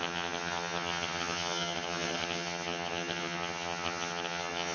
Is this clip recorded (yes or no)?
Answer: no